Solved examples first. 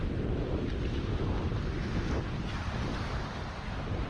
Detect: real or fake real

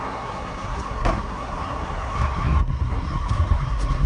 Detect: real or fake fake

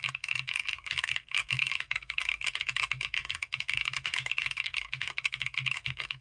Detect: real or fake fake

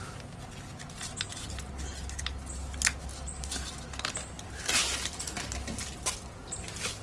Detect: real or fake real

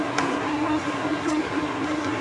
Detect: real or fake fake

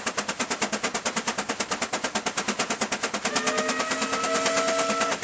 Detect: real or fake real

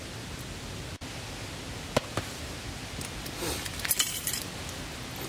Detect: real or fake real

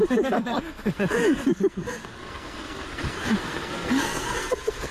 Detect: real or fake fake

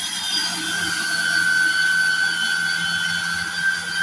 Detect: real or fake real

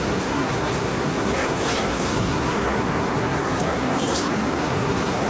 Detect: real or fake fake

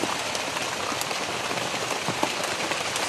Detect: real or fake real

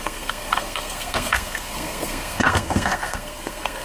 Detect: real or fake fake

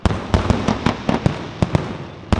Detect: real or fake real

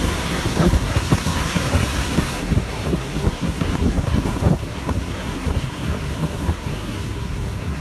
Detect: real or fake fake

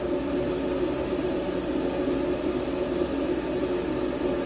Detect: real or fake real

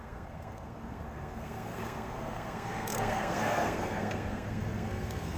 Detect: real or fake fake